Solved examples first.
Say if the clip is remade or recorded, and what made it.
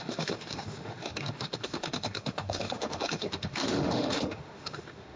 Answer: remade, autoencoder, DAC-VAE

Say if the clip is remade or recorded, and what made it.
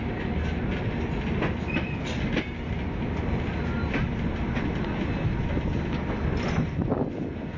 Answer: recorded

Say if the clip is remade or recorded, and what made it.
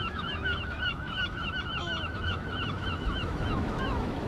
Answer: remade, autoencoder, DAC-VAE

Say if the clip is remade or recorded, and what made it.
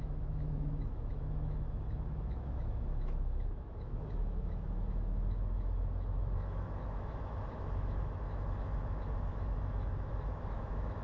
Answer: remade, autoencoder, DAC-VAE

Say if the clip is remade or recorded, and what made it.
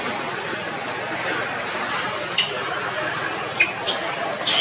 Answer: recorded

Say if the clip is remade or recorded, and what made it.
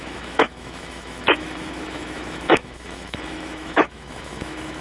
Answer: remade, autoencoder, DAC-VAE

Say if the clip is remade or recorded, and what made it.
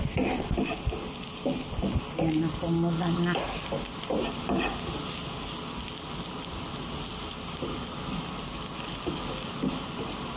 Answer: recorded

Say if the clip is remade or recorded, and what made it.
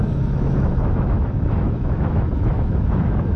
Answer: remade, autoencoder, DAC-VAE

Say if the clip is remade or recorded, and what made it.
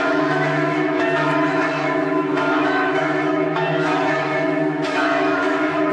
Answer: remade, autoencoder, DAC-VAE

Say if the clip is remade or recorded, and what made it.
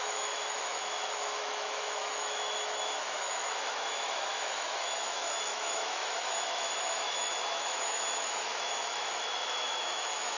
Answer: remade, autoencoder, DAC-VAE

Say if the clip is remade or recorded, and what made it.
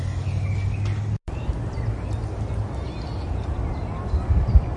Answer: recorded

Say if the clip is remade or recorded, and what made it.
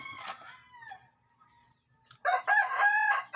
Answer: recorded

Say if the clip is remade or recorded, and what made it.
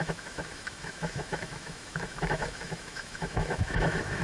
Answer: remade, autoencoder, DAC-VAE